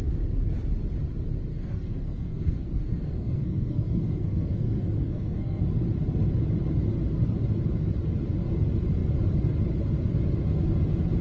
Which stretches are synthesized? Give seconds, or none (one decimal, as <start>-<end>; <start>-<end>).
1.5-5.6